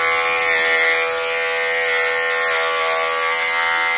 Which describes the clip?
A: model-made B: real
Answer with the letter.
B